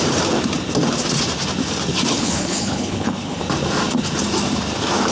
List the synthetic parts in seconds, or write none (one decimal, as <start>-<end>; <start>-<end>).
2.1-3.4